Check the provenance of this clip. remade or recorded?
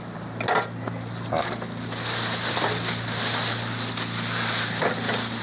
recorded